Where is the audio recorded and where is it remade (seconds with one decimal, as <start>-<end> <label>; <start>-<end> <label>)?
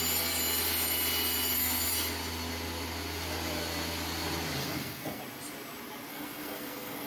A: 0.0-4.6 recorded; 4.6-5.2 remade; 5.2-6.1 recorded; 6.1-7.1 remade